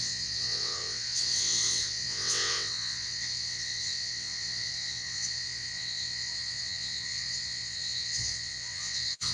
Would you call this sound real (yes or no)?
no